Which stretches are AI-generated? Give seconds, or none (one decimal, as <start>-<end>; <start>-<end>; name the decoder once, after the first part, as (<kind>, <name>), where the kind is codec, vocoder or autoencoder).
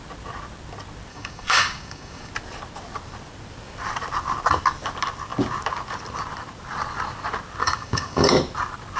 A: 1.1-2.3 (codec, DAC); 7.6-8.3